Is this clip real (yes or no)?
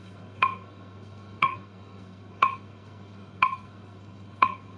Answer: no